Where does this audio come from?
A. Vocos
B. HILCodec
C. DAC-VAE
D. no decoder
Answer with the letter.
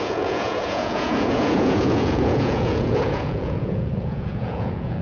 A